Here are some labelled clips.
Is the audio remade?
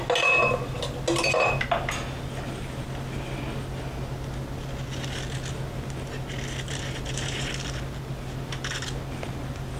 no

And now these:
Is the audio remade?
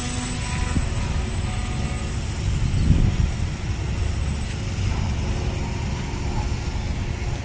no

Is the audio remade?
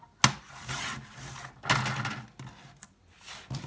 no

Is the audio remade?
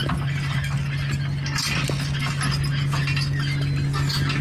no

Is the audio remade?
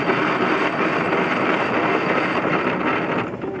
no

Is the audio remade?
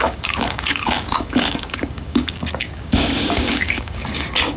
yes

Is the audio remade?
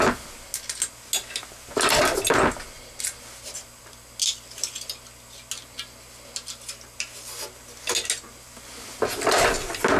no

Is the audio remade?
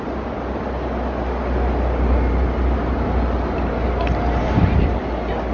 no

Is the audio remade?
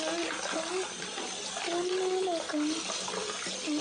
no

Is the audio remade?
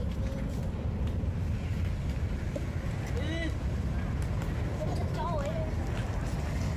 no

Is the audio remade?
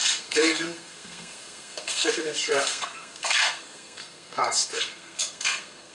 yes